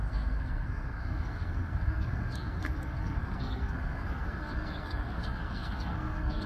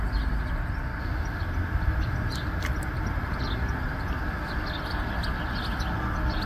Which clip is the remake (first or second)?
first